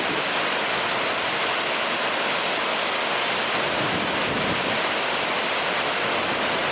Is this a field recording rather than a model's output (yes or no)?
yes